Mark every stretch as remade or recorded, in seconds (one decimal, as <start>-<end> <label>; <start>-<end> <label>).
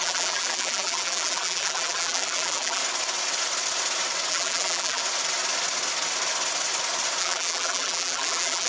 0.0-2.8 remade; 2.8-4.3 recorded; 4.3-5.0 remade; 5.0-7.2 recorded; 7.2-8.7 remade